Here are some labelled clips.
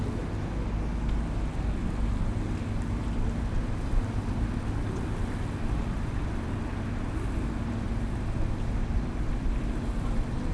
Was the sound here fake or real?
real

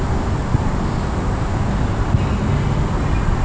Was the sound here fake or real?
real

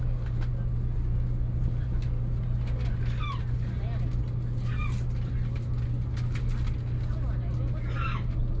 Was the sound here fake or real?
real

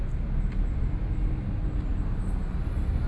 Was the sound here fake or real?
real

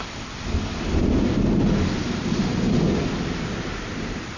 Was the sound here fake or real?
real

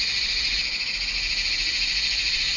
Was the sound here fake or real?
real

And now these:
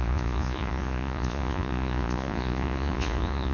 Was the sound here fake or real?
fake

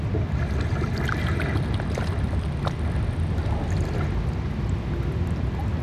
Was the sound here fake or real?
real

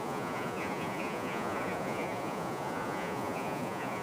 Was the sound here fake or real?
fake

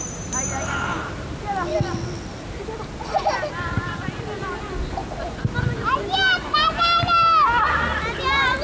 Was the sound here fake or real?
real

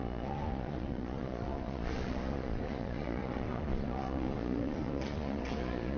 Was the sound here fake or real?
fake